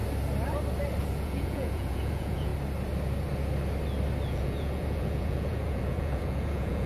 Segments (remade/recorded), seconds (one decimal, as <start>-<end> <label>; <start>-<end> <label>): 0.0-1.0 recorded; 1.0-2.5 remade; 2.5-4.3 recorded; 4.3-6.9 remade